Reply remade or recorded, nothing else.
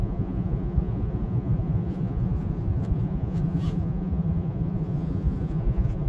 remade